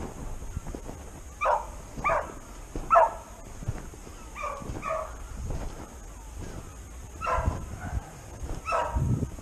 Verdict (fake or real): real